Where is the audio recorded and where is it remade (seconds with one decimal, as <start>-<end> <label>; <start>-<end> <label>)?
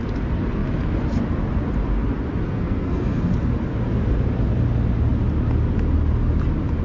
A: 0.0-2.4 recorded; 2.4-3.3 remade; 3.3-6.8 recorded